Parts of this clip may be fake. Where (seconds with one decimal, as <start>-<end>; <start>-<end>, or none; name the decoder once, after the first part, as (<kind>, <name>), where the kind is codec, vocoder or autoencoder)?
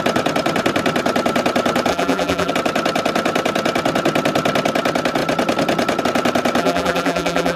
1.9-2.5 (vocoder, BigVGAN v2); 6.6-7.6